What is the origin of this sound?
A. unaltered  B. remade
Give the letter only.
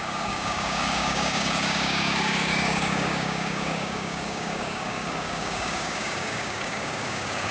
B